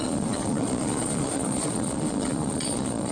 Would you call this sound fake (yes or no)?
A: yes